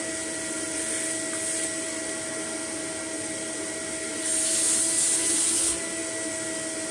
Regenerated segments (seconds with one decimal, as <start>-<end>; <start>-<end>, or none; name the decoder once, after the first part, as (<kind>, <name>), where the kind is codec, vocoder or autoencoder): none